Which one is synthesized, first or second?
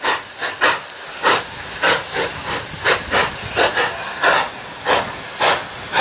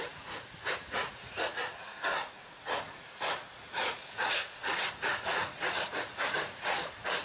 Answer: second